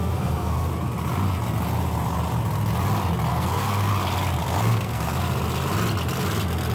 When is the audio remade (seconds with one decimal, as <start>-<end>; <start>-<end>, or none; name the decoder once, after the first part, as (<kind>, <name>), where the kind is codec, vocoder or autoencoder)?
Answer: 0.0-0.7 (codec, SNAC); 3.3-3.9; 4.4-5.2